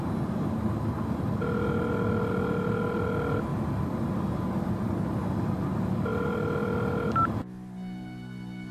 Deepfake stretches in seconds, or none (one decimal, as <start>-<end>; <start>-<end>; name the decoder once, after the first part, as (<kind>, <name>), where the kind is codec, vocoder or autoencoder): none